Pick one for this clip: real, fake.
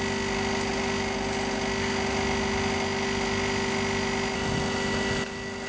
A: real